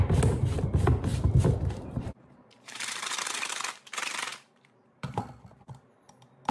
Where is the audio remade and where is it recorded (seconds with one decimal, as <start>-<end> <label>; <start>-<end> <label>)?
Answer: 0.0-1.1 recorded; 1.1-3.5 remade; 3.5-4.3 recorded; 4.3-5.2 remade; 5.2-6.5 recorded